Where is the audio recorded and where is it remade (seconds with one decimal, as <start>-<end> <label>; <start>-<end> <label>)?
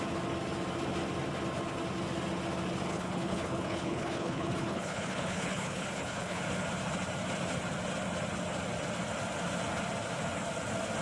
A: 0.0-2.9 recorded; 2.9-6.4 remade; 6.4-11.0 recorded